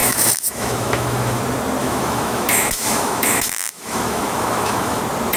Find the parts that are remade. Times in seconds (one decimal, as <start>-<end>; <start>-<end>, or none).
0.0-1.4; 1.8-5.0